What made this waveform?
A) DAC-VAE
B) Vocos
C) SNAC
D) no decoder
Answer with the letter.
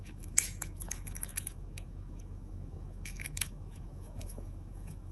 A